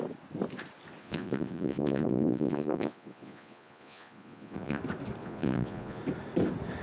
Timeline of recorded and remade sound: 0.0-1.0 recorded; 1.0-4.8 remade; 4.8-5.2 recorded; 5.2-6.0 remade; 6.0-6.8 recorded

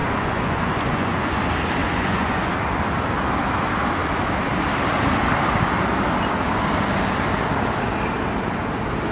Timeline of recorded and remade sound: 0.0-1.4 remade; 1.4-1.8 recorded; 1.8-2.5 remade; 2.5-9.1 recorded

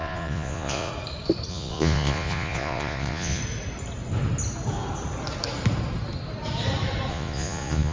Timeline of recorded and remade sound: 0.0-0.9 remade; 0.9-1.5 recorded; 1.5-3.4 remade; 3.4-7.1 recorded; 7.1-7.9 remade